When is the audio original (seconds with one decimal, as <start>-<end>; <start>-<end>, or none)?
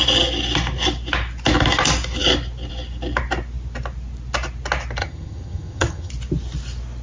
0.0-5.0; 6.1-7.0